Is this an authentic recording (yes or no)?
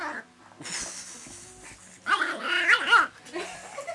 yes